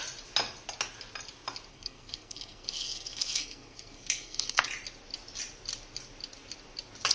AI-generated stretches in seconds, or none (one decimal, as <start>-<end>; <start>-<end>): 1.7-4.6